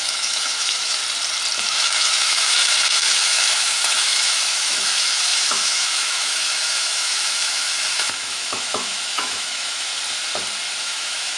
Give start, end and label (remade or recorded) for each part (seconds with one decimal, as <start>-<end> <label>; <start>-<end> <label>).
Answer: 0.0-1.0 remade; 1.0-1.6 recorded; 1.6-9.9 remade; 9.9-10.8 recorded; 10.8-11.4 remade